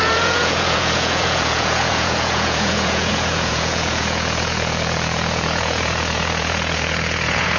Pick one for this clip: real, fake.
fake